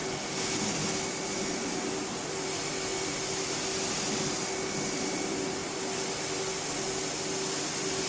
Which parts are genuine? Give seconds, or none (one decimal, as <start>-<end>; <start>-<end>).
0.0-8.1